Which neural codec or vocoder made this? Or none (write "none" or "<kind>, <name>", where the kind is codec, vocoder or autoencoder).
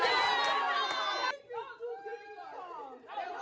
none